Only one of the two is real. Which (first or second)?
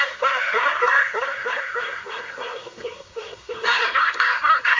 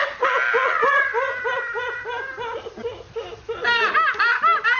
second